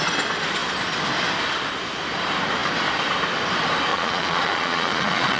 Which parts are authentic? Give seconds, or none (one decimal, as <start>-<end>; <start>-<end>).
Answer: 0.0-3.9